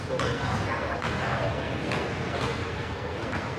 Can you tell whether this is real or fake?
fake